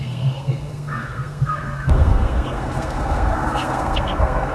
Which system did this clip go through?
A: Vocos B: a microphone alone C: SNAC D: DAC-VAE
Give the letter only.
C